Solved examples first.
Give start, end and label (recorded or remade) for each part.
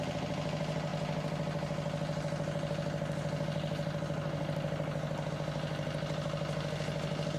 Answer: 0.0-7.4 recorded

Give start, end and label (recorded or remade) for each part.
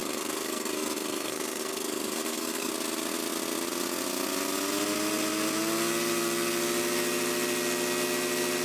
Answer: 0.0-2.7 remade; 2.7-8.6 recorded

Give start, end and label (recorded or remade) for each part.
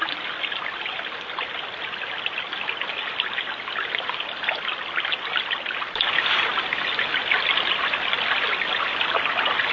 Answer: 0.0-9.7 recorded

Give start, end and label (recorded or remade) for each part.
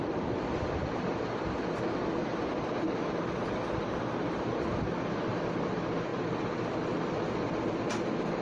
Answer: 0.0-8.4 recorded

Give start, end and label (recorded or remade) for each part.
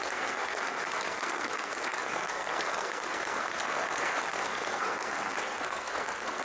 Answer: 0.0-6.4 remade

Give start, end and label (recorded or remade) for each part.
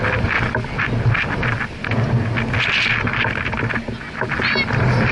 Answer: 0.0-5.1 recorded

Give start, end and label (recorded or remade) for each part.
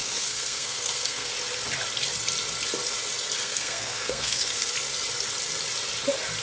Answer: 0.0-1.3 remade; 1.3-3.4 recorded; 3.4-4.7 remade; 4.7-6.4 recorded